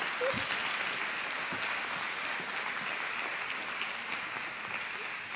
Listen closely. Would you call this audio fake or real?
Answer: real